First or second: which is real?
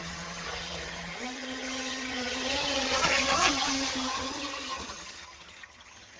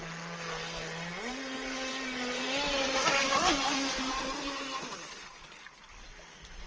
second